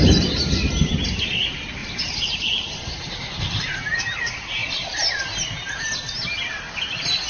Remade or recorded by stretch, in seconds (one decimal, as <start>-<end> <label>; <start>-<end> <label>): 0.0-1.8 recorded; 1.8-3.6 remade; 3.6-7.3 recorded